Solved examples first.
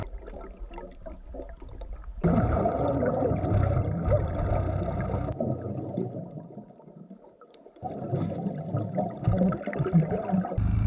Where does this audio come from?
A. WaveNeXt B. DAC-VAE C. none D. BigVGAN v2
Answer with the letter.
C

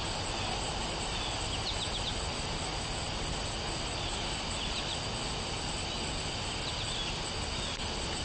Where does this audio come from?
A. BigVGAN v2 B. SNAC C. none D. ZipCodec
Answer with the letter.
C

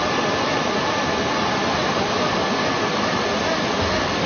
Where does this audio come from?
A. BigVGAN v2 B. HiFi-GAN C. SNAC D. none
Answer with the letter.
D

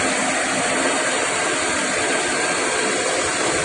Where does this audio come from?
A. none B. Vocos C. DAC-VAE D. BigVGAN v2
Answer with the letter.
A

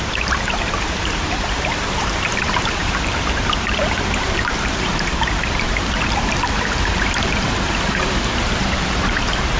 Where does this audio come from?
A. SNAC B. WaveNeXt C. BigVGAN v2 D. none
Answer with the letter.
C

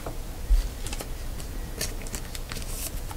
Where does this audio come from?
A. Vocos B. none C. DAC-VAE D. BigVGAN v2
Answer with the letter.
B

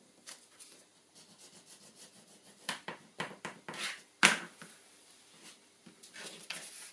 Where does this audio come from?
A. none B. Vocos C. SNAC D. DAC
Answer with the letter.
A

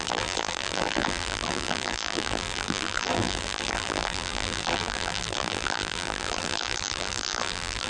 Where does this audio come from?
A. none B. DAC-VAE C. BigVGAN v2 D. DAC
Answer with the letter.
C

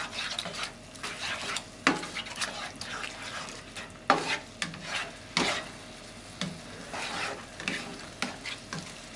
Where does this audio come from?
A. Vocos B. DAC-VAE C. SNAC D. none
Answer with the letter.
D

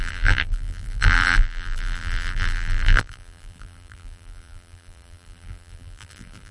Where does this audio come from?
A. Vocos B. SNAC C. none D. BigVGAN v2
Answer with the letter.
D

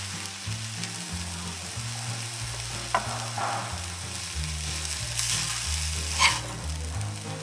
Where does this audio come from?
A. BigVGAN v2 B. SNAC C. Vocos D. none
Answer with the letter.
D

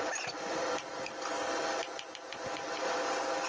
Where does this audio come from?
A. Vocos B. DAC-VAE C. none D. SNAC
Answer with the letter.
C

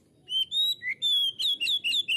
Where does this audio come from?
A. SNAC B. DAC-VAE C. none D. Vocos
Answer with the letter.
C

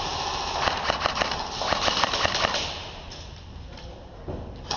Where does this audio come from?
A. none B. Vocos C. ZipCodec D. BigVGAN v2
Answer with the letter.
A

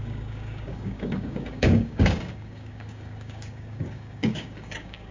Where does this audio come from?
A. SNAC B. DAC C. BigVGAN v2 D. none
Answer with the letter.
B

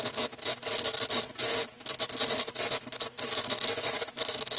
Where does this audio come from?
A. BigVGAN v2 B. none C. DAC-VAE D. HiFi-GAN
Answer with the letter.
B